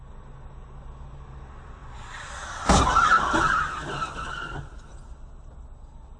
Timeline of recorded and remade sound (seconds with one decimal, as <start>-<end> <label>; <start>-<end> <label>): 0.0-6.2 recorded